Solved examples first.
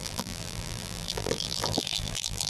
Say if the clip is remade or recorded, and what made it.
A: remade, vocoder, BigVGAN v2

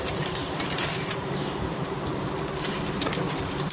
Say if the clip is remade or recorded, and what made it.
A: remade, vocoder, BigVGAN v2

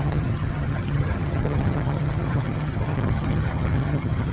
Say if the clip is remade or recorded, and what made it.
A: remade, vocoder, HiFi-GAN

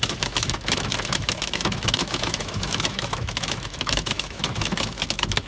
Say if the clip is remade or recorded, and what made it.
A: remade, autoencoder, DAC-VAE